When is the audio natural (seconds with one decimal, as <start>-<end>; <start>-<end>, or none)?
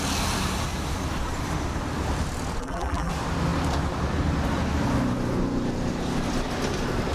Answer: 0.0-2.6; 3.1-7.1